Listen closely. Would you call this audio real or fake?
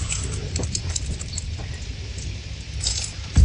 fake